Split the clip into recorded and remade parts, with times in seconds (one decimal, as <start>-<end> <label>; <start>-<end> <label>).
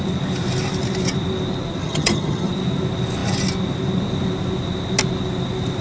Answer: 0.0-1.8 recorded; 1.8-2.5 remade; 2.5-5.8 recorded